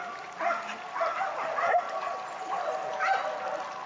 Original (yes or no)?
yes